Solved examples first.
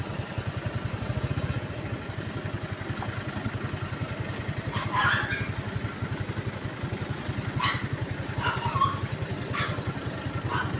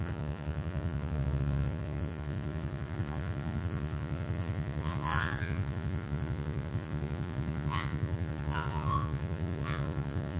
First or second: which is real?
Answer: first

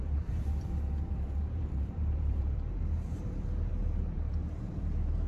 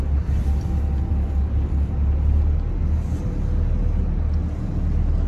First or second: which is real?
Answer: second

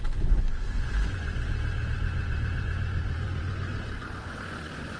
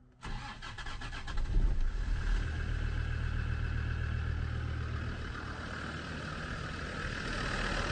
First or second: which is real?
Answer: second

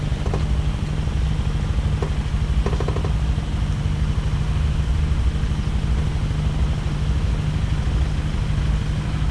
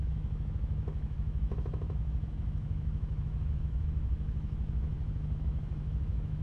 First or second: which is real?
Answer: first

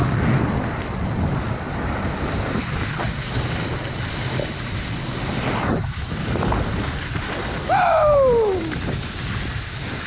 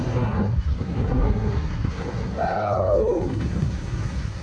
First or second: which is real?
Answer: first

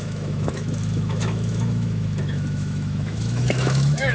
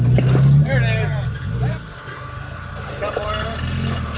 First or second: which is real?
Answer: second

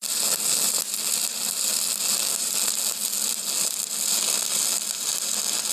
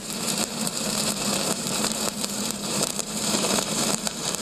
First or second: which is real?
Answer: first